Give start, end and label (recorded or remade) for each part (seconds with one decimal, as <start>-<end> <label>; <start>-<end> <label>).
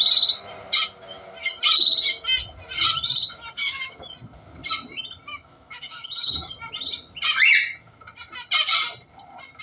0.0-3.6 recorded; 3.6-4.1 remade; 4.1-5.3 recorded; 5.3-6.5 remade; 6.5-9.6 recorded